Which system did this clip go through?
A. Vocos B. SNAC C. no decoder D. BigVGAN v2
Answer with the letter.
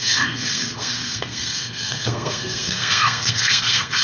B